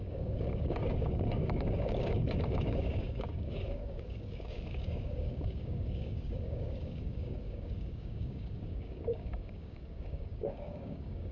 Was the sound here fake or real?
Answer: fake